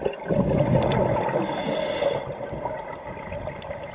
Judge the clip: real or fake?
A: real